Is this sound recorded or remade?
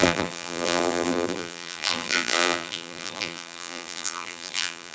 remade